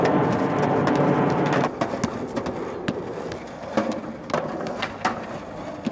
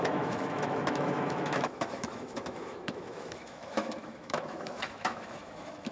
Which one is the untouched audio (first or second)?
first